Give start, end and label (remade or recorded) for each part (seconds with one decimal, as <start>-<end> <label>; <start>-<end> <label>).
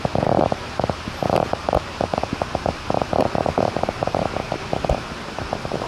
0.0-5.9 remade